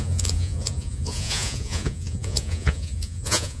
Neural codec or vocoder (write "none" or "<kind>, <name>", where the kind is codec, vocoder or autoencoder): vocoder, Vocos